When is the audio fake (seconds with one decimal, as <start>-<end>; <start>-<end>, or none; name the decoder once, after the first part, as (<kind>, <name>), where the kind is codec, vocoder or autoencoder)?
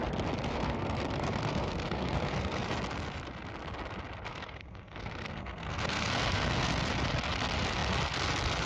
0.5-2.6 (codec, SNAC); 4.3-6.7